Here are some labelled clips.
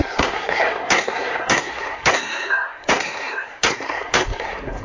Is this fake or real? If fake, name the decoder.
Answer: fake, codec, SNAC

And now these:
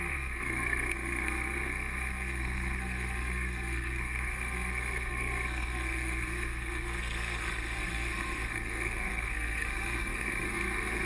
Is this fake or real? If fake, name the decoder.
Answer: fake, codec, SNAC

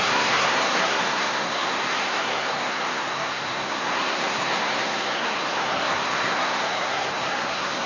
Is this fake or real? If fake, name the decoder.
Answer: fake, codec, SNAC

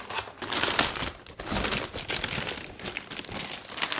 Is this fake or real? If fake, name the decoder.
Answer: real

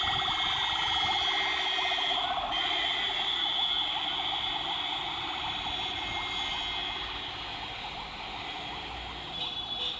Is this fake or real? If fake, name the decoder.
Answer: real